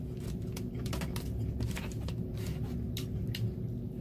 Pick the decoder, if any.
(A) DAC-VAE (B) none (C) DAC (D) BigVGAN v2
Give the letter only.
B